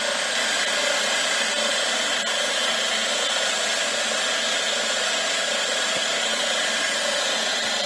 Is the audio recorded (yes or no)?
yes